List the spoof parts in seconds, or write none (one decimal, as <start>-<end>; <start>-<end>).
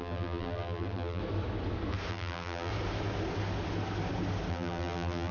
0.0-1.2; 2.1-2.7; 4.5-5.3